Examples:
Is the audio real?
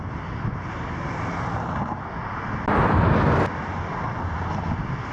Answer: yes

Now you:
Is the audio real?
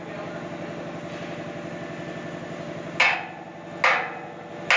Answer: yes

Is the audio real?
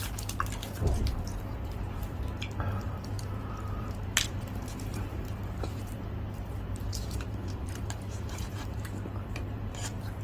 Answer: no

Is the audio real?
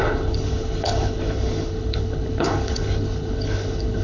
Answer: no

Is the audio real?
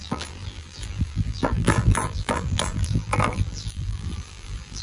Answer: no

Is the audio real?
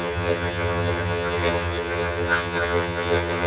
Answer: no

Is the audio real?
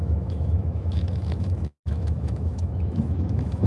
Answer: no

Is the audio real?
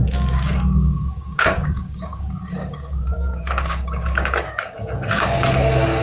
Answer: no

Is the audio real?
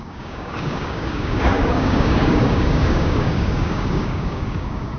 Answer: no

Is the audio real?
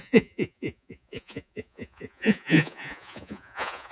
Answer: no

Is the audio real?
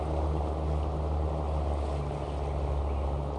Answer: yes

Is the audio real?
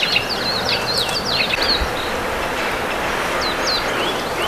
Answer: yes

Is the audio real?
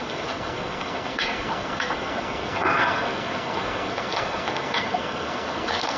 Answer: no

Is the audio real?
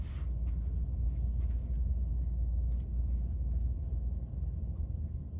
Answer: yes